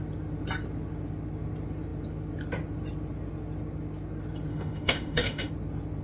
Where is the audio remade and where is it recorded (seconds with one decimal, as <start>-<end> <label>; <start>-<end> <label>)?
0.0-4.5 recorded; 4.5-5.5 remade; 5.5-6.0 recorded

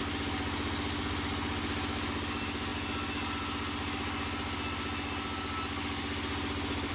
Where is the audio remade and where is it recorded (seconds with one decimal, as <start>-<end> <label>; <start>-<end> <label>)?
0.0-6.9 recorded

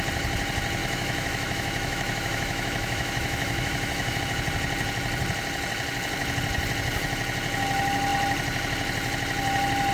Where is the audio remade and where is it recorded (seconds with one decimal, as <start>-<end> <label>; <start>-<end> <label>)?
0.0-0.8 recorded; 0.8-4.2 remade; 4.2-9.9 recorded

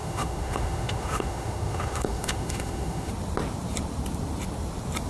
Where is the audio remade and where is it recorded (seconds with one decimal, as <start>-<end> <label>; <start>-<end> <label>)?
0.0-3.1 remade; 3.1-5.1 recorded

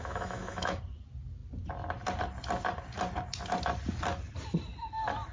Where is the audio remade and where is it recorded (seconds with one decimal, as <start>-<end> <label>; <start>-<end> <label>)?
0.0-0.8 remade; 0.8-5.3 recorded